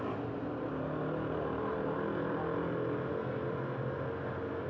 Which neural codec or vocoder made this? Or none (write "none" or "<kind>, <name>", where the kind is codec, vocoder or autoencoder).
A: none